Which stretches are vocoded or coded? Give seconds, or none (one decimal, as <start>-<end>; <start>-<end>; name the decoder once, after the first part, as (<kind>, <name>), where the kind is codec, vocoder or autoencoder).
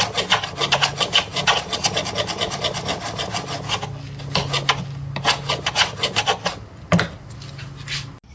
none